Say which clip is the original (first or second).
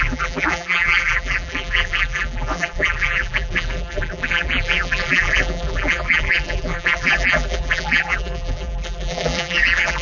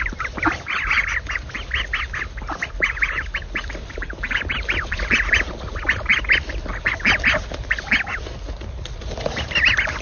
second